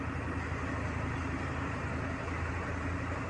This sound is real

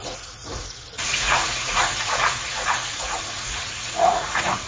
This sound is fake